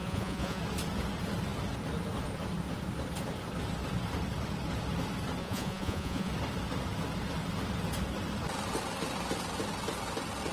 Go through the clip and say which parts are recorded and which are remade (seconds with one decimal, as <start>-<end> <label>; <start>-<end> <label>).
0.0-0.6 remade; 0.6-5.4 recorded; 5.4-6.3 remade; 6.3-10.5 recorded